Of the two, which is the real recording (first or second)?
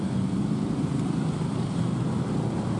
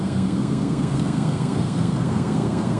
first